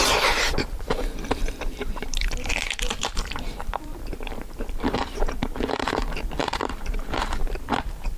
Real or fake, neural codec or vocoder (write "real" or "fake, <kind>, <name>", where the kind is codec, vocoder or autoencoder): fake, vocoder, BigVGAN v2